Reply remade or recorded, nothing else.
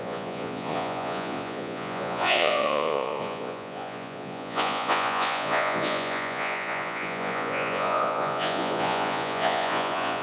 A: remade